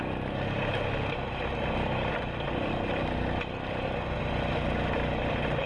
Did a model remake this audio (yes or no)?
no